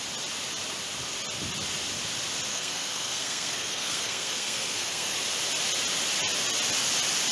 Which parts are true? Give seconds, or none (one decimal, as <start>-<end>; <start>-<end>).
0.0-2.5; 5.2-7.3